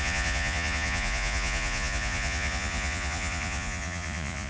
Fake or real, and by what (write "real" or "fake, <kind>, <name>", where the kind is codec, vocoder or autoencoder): fake, vocoder, Vocos